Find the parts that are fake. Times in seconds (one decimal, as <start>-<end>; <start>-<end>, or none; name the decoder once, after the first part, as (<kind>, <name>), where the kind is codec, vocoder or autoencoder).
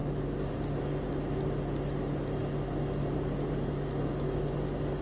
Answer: none